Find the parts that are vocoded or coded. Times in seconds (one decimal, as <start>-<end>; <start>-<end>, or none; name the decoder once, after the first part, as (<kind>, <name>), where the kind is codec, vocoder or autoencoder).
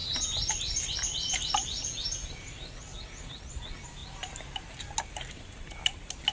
none